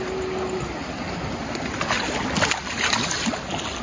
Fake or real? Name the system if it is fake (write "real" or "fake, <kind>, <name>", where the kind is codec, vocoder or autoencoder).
real